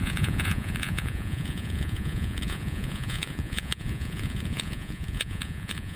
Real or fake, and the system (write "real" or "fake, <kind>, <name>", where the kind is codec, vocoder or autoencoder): fake, vocoder, Vocos